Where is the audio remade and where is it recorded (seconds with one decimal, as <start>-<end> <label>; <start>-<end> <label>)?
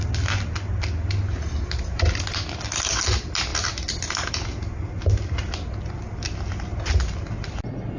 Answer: 0.0-8.0 recorded